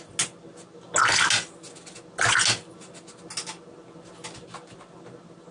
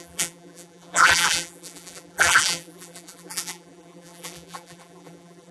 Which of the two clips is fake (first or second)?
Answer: second